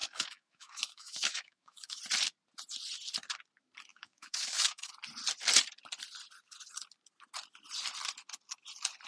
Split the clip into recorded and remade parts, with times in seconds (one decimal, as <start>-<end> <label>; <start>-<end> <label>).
0.0-2.0 remade; 2.0-3.9 recorded; 3.9-4.9 remade; 4.9-9.1 recorded